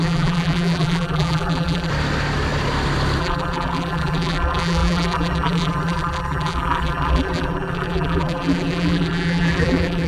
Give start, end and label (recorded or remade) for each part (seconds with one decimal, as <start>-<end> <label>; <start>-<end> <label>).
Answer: 0.0-1.9 remade; 1.9-3.2 recorded; 3.2-10.1 remade